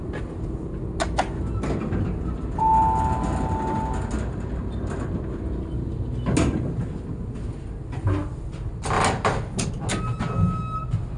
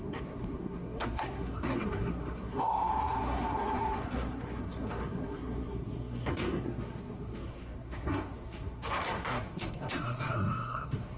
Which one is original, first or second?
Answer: first